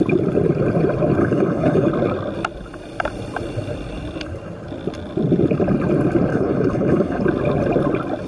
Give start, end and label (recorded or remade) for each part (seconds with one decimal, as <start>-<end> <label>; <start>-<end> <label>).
0.0-1.2 recorded; 1.2-1.9 remade; 1.9-6.3 recorded; 6.3-7.2 remade; 7.2-8.3 recorded